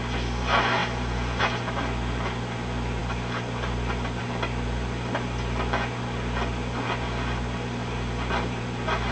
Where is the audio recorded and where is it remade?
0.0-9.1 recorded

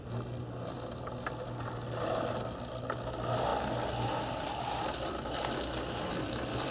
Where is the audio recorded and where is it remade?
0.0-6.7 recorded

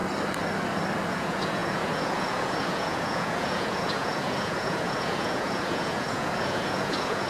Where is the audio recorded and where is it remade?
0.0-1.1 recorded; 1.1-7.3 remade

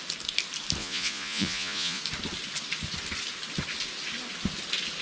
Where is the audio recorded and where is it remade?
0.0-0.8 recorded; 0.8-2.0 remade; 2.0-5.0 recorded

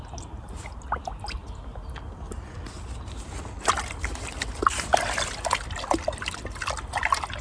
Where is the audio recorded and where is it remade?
0.0-7.4 recorded